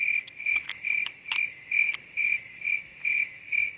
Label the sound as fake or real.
real